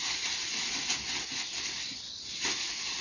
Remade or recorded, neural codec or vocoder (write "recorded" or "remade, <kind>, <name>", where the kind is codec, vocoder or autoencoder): recorded